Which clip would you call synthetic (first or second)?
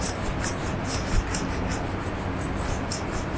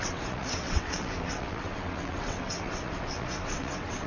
second